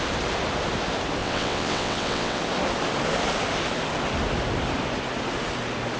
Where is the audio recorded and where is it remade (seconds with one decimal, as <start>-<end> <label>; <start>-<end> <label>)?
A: 0.0-1.2 recorded; 1.2-2.4 remade; 2.4-6.0 recorded

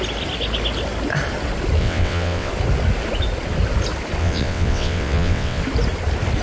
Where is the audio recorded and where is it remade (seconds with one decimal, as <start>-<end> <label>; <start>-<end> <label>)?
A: 0.0-1.8 recorded; 1.8-2.5 remade; 2.5-4.2 recorded; 4.2-5.6 remade; 5.6-6.4 recorded